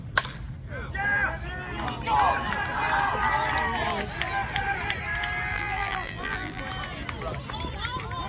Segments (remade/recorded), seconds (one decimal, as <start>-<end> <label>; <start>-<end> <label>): 0.0-5.5 recorded; 5.5-6.6 remade; 6.6-8.3 recorded